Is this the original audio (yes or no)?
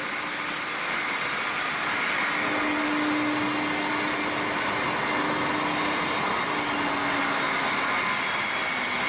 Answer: yes